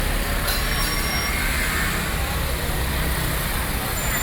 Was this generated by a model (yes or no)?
no